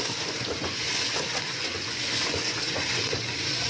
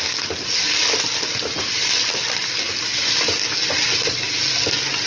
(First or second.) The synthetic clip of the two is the first